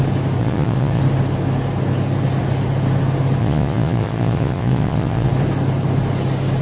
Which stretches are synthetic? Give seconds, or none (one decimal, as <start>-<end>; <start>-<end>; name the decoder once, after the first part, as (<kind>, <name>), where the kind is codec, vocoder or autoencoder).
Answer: 0.4-1.0 (vocoder, Vocos); 3.4-5.3

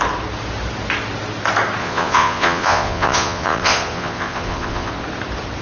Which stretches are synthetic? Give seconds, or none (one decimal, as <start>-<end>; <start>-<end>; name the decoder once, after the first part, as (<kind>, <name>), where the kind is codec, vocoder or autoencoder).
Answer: 1.8-4.9 (vocoder, Vocos)

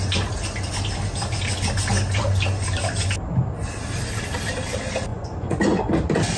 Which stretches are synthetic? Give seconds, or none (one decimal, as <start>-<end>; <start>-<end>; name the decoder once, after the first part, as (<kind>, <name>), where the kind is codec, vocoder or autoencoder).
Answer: 5.1-5.8 (vocoder, Vocos)

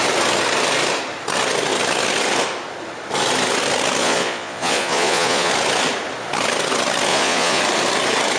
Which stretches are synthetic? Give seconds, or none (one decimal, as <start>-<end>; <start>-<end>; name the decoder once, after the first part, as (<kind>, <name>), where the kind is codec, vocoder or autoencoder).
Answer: 4.0-5.5 (vocoder, Vocos); 7.1-7.6

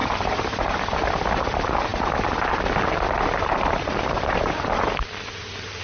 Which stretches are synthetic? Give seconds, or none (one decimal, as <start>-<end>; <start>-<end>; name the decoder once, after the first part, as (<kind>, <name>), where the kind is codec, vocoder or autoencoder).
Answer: none

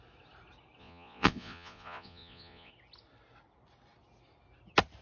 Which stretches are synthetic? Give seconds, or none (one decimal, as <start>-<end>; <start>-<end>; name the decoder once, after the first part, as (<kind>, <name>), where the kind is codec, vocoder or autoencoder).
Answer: 0.8-2.7 (vocoder, Vocos)

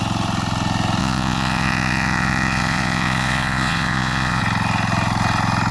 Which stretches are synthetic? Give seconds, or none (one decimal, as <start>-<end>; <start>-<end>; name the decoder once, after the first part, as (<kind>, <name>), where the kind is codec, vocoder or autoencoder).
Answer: 1.0-4.4 (vocoder, Vocos)